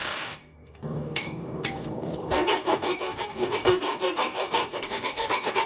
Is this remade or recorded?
remade